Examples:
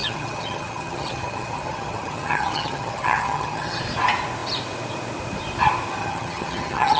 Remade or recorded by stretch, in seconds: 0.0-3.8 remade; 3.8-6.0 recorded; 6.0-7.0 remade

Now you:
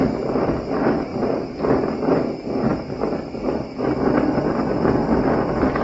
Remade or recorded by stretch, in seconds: 0.0-1.1 recorded; 1.1-1.6 remade; 1.6-5.8 recorded

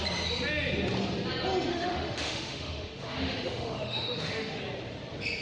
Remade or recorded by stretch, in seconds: 0.0-1.7 recorded; 1.7-4.6 remade; 4.6-5.4 recorded